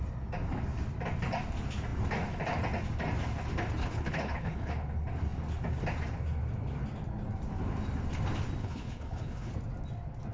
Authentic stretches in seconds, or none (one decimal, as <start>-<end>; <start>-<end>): 0.0-3.8; 4.7-8.6; 9.5-10.3